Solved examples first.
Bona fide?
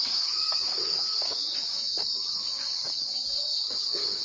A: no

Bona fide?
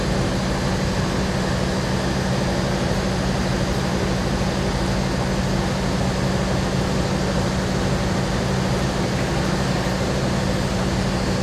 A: yes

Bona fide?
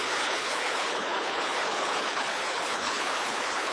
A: no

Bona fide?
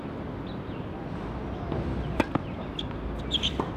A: yes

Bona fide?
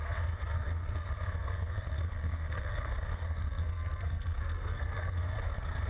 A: no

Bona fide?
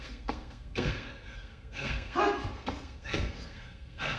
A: no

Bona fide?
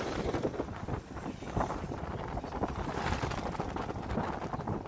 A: yes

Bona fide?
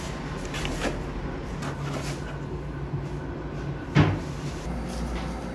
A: yes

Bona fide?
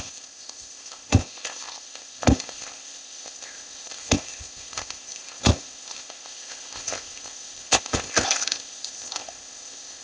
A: no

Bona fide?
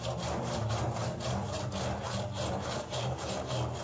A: yes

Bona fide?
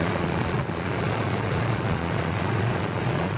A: no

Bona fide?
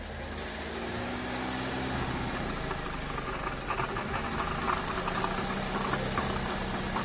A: yes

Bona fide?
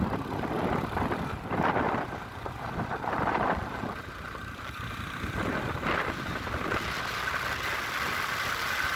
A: yes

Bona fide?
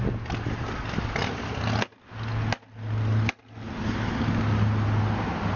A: yes